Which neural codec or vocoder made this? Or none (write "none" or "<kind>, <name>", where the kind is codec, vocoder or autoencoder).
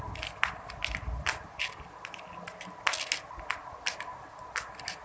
none